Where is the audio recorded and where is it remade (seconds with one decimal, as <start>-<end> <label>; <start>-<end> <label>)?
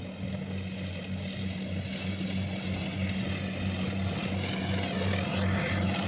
0.0-6.1 recorded